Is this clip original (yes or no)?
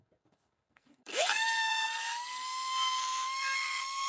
no